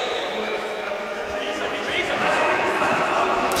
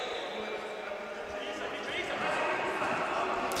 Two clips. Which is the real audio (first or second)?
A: second